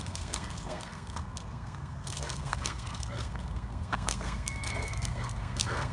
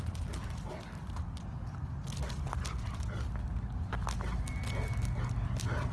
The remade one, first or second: first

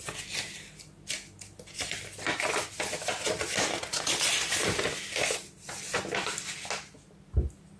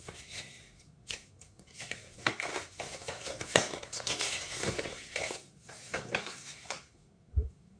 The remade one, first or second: second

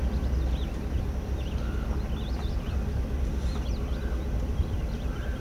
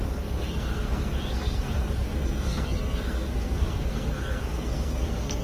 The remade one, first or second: second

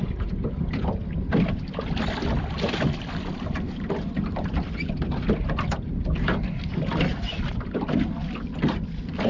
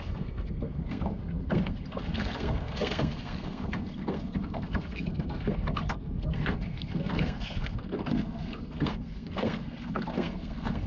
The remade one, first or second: second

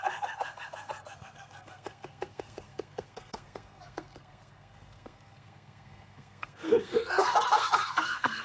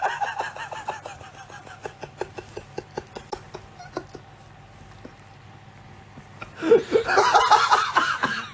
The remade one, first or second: first